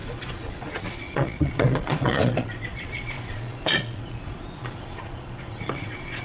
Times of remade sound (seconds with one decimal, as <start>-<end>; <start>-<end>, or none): 0.0-6.2